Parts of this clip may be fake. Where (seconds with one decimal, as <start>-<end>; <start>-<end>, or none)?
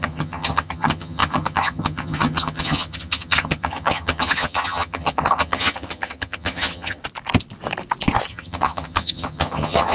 0.0-7.0; 8.3-9.9